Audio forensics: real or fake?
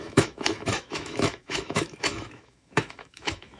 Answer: fake